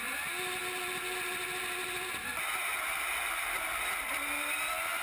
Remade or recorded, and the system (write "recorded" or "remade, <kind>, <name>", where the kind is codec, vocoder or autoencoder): recorded